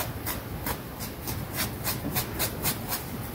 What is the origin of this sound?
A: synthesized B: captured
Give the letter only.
A